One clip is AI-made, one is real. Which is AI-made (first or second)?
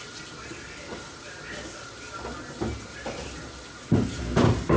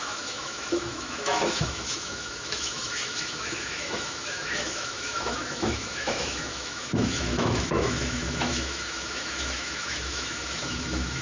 second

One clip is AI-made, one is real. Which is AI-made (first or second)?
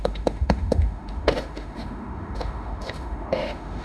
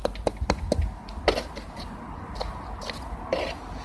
first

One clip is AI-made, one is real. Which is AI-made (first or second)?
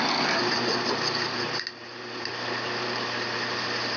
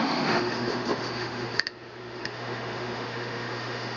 second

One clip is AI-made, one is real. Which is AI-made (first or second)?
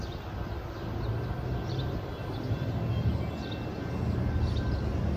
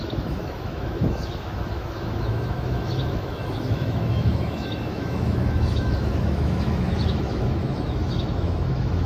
second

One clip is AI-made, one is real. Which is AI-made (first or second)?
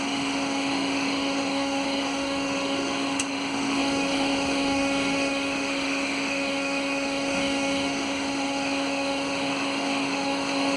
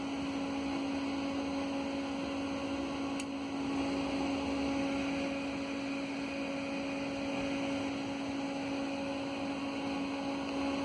first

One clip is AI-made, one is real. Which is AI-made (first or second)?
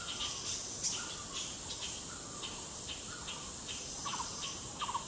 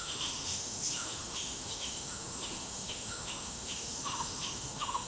second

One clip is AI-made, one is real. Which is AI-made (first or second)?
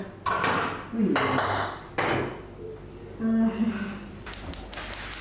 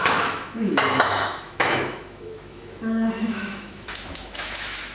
second